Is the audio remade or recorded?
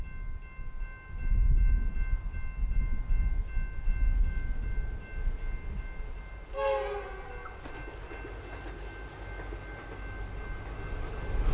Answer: recorded